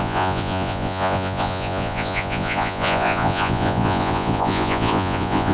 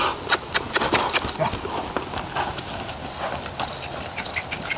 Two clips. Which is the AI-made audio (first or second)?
first